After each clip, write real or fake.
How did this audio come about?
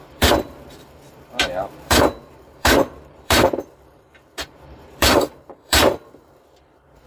fake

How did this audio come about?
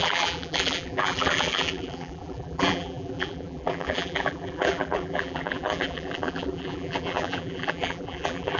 fake